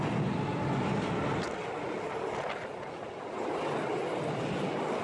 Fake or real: real